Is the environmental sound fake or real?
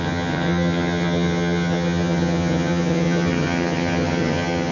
fake